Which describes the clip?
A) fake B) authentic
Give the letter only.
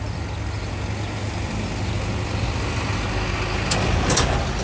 B